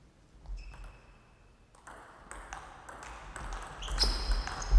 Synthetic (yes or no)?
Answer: no